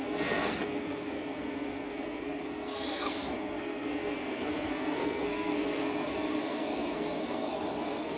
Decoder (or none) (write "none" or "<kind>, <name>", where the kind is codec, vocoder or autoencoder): codec, SNAC